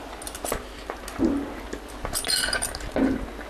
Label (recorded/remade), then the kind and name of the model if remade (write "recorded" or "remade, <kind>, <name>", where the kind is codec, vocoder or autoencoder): recorded